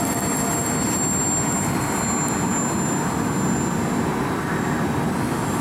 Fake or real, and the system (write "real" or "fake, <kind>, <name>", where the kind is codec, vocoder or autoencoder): real